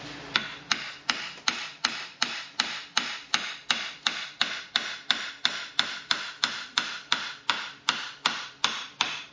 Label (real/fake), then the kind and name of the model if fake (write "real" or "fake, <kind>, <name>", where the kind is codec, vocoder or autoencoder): fake, vocoder, BigVGAN v2